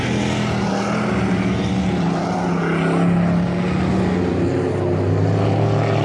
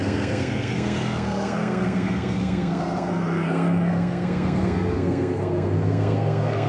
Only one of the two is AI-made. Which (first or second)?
second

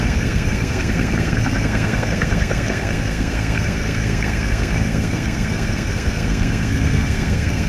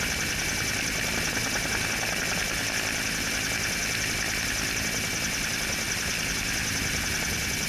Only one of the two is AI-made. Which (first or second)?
first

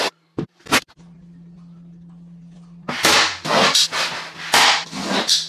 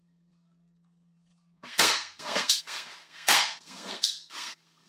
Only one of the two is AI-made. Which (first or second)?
second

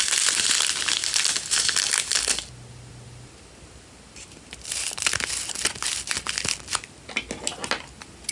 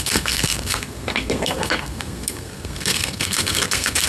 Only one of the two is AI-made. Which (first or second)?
second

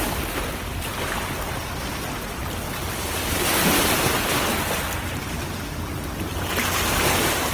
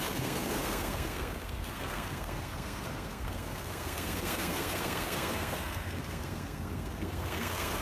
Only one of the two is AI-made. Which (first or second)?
second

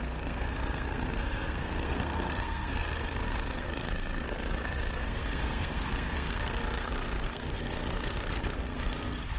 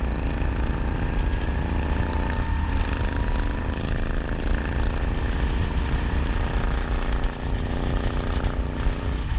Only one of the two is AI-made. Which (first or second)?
first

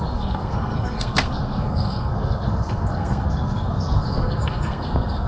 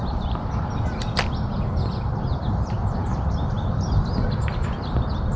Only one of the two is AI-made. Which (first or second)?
first